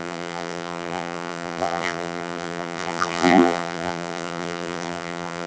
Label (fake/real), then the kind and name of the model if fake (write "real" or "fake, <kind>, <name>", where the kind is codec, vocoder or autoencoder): fake, vocoder, BigVGAN v2